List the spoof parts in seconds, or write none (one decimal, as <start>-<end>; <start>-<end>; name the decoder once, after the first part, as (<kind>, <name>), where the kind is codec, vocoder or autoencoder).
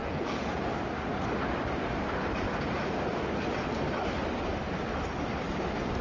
0.0-0.6 (vocoder, Vocos)